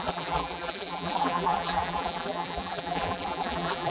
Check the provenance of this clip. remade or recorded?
remade